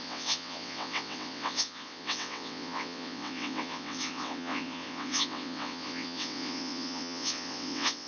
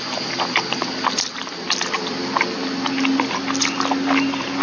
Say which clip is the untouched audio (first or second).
second